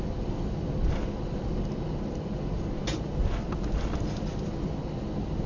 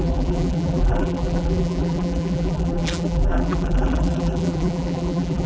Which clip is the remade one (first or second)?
second